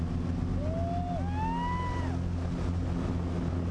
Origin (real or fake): real